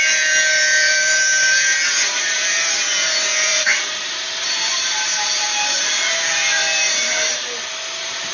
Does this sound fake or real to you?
fake